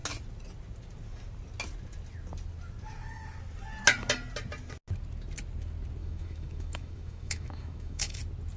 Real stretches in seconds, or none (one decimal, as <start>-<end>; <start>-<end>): 0.0-6.0; 8.2-8.6